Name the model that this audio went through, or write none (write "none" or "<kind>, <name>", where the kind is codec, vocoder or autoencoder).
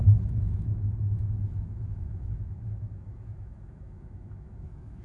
autoencoder, DAC-VAE